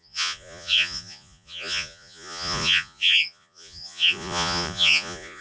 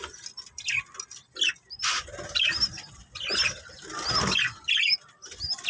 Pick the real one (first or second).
second